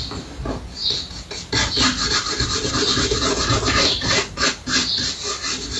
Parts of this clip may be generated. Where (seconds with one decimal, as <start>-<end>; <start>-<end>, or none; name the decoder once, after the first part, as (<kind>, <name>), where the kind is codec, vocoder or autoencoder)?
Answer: none